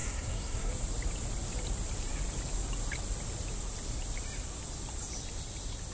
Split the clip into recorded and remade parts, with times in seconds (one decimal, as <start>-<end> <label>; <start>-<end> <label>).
0.0-0.7 remade; 0.7-5.9 recorded